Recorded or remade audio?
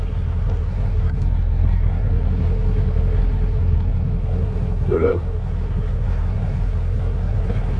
remade